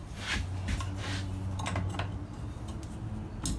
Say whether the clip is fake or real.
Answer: real